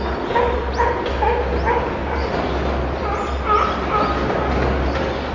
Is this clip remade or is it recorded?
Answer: recorded